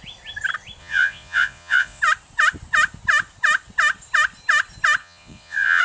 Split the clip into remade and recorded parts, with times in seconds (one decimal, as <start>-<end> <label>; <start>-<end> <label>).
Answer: 0.0-0.8 recorded; 0.8-2.0 remade; 2.0-5.0 recorded; 5.0-5.8 remade